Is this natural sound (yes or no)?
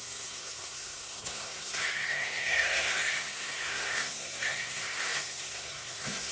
no